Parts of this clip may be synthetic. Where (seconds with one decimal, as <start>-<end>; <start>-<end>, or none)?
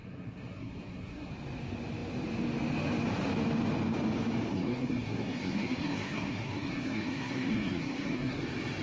0.0-1.3; 4.5-8.4